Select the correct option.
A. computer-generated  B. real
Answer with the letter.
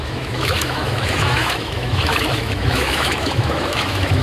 A